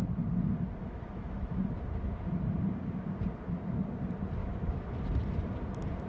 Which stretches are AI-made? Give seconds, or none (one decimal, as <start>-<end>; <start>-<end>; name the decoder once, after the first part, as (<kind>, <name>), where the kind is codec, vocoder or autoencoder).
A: 0.8-1.6 (autoencoder, DAC-VAE); 4.4-4.9